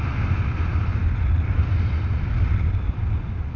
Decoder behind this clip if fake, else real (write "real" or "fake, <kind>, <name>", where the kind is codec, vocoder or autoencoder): real